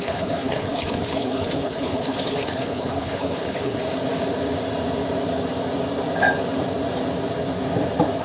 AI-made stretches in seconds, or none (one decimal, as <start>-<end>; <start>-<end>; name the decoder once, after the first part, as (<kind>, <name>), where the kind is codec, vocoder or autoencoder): 0.0-3.8 (codec, HILCodec)